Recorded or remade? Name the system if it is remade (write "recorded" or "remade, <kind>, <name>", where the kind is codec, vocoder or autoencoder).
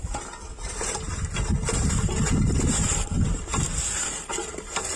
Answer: recorded